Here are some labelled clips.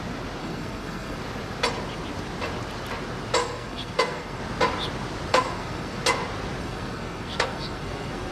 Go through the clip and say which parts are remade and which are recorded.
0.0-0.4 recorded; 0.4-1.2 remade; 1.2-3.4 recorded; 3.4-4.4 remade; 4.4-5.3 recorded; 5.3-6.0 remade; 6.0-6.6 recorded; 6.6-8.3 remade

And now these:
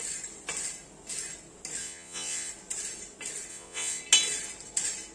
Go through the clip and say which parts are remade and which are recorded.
0.0-1.8 recorded; 1.8-2.5 remade; 2.5-3.5 recorded; 3.5-4.0 remade; 4.0-5.1 recorded

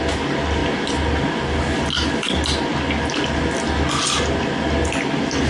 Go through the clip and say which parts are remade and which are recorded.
0.0-5.5 recorded

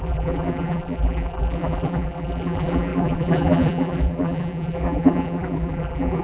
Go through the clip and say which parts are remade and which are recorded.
0.0-6.2 remade

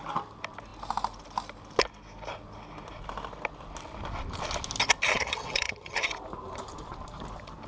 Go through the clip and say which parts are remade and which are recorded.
0.0-5.1 recorded; 5.1-6.1 remade; 6.1-7.7 recorded